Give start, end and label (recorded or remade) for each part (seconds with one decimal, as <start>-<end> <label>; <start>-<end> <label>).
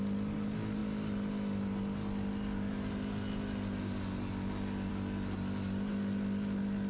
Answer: 0.0-6.9 recorded